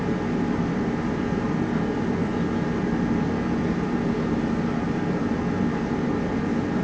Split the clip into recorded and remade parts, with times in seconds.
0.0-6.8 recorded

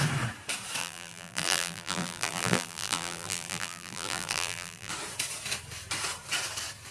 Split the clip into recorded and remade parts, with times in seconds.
0.0-0.8 recorded; 0.8-4.9 remade; 4.9-6.9 recorded

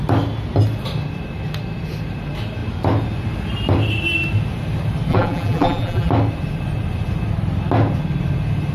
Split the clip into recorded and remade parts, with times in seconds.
0.0-5.1 recorded; 5.1-6.1 remade; 6.1-8.7 recorded

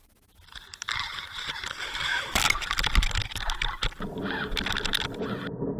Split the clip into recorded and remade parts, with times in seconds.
0.0-2.4 remade; 2.4-5.8 recorded

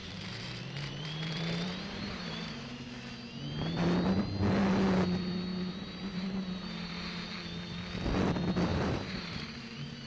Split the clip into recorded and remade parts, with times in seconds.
0.0-2.9 remade; 2.9-5.5 recorded; 5.5-6.9 remade; 6.9-8.7 recorded; 8.7-10.1 remade